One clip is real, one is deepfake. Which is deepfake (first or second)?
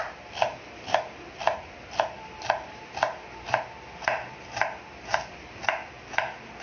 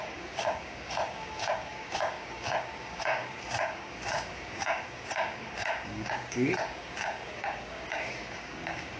second